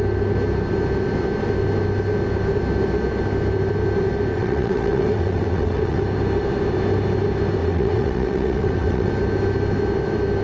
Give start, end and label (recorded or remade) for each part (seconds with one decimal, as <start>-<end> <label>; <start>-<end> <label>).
0.0-4.3 recorded; 4.3-6.0 remade; 6.0-7.6 recorded; 7.6-9.1 remade; 9.1-10.4 recorded